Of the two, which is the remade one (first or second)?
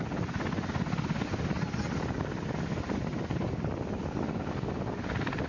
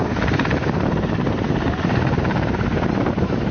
second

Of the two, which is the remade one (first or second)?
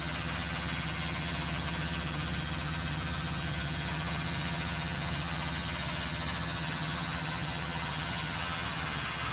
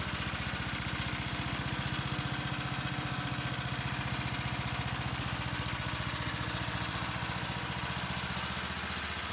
first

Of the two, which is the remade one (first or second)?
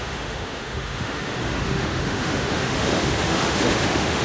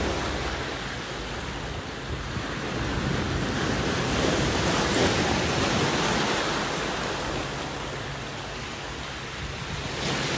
first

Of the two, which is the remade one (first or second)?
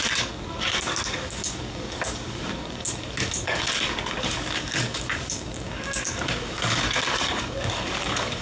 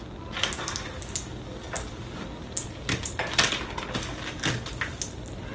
first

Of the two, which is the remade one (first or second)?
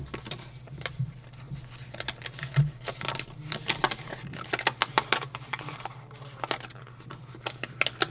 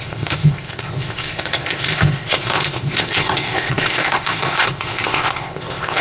second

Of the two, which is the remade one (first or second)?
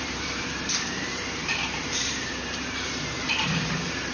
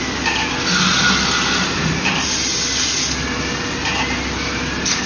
first